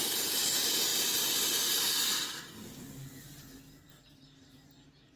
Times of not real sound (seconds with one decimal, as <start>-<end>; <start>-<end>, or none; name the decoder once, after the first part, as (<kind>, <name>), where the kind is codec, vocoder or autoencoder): none